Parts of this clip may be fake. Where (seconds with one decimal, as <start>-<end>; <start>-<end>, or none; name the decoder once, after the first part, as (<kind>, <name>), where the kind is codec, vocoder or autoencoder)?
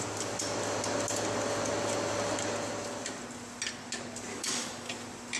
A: 4.3-4.9 (codec, DAC)